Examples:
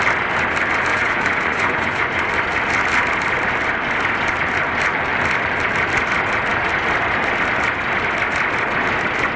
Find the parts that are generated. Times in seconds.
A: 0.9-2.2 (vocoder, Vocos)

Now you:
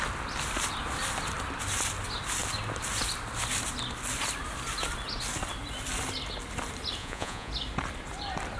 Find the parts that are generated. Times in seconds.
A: 7.0-7.5 (vocoder, Vocos)

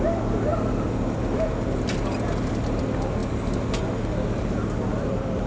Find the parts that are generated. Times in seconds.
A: none

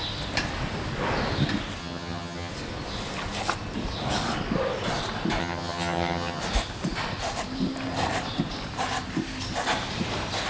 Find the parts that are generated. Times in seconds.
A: 1.8-2.5 (vocoder, HiFi-GAN); 5.4-6.4

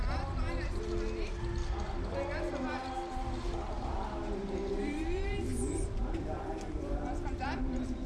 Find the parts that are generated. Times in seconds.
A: 4.8-8.1 (vocoder, BigVGAN v2)

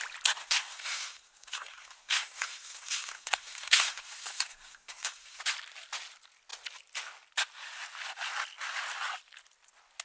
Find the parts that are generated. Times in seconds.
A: 0.4-5.4 (codec, SNAC)

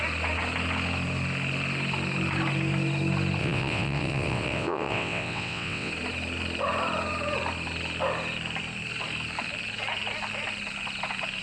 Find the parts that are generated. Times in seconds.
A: 3.4-5.9 (vocoder, WaveNeXt)